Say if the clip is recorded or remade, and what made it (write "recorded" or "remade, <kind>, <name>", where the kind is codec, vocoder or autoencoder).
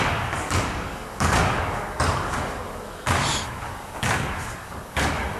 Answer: remade, codec, DAC